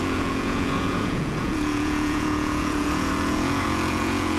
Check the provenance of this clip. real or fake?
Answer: fake